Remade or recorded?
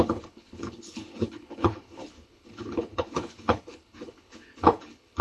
remade